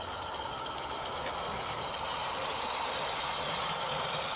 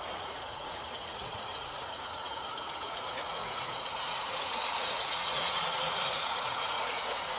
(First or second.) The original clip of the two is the first